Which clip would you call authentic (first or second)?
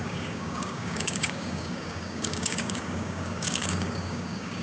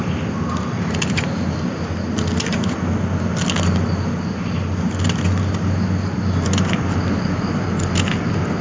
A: second